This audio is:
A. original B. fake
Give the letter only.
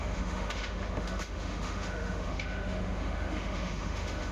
B